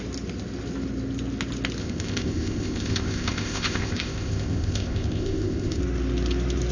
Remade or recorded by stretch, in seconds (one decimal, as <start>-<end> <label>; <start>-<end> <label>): 0.0-1.8 recorded; 1.8-5.8 remade; 5.8-6.7 recorded

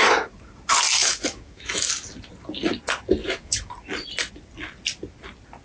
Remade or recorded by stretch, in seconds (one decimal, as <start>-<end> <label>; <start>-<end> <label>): 0.0-1.0 recorded; 1.0-1.9 remade; 1.9-3.2 recorded; 3.2-3.7 remade; 3.7-5.6 recorded

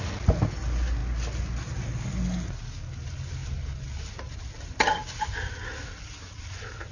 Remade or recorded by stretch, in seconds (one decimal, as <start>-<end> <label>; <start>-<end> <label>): 0.0-6.9 recorded